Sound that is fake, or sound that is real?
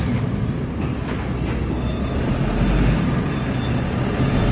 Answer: real